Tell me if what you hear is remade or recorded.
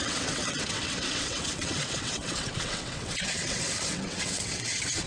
remade